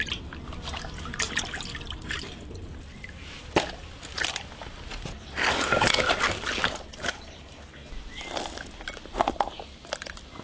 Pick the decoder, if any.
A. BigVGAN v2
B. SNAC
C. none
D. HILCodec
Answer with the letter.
C